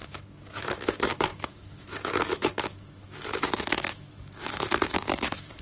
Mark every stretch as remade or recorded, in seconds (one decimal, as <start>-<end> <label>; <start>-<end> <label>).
0.0-5.6 remade